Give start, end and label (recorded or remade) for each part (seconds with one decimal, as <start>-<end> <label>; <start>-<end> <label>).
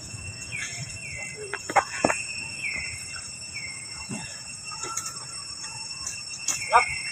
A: 0.0-1.0 remade; 1.0-1.6 recorded; 1.6-7.1 remade